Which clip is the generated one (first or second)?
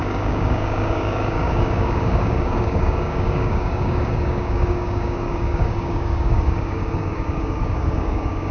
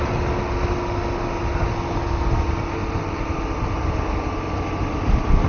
first